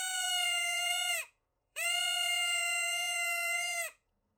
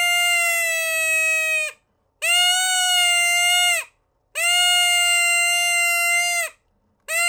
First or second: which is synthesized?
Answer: first